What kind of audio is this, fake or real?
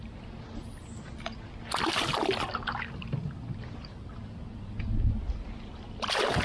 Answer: real